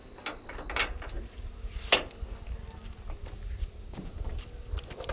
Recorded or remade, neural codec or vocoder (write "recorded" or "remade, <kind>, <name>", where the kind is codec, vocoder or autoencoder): recorded